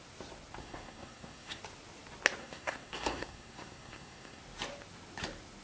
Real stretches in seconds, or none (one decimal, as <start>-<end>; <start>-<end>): 0.0-0.6; 1.6-2.4; 4.4-5.6